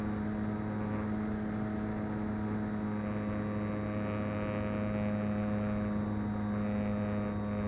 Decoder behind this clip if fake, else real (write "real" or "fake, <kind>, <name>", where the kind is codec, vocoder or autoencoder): real